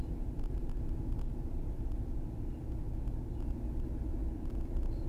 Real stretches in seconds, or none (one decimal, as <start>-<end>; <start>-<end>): 0.0-1.3; 2.6-4.2